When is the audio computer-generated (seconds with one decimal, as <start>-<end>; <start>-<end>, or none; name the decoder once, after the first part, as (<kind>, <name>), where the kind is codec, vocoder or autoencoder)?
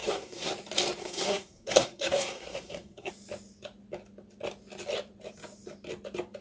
0.0-0.5 (codec, SNAC); 1.0-3.1